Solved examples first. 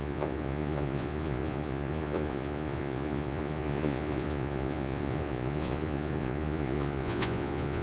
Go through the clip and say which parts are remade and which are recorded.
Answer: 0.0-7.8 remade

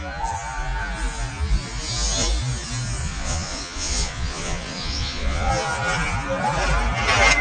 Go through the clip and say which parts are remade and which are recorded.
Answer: 0.0-3.0 recorded; 3.0-5.5 remade; 5.5-7.4 recorded

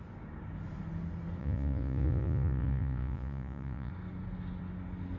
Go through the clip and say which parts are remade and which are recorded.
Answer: 0.0-1.4 recorded; 1.4-3.9 remade; 3.9-5.2 recorded

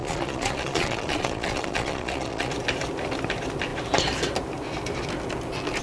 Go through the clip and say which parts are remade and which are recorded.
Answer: 0.0-2.5 remade; 2.5-5.8 recorded

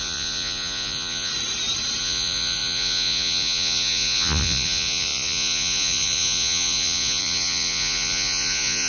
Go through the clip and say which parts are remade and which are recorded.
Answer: 0.0-1.3 remade; 1.3-2.0 recorded; 2.0-8.9 remade

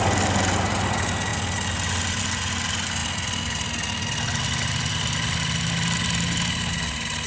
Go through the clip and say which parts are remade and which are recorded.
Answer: 0.0-7.3 recorded